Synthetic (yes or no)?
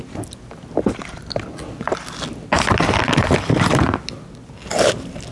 no